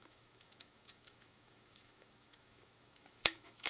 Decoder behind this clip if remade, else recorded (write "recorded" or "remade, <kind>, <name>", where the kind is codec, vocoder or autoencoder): remade, autoencoder, DAC-VAE